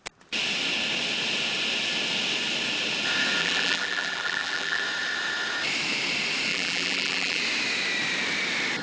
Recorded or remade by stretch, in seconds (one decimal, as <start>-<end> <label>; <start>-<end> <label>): 0.0-3.4 recorded; 3.4-4.8 remade; 4.8-6.5 recorded; 6.5-7.4 remade; 7.4-8.8 recorded